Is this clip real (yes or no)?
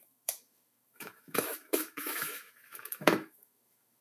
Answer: no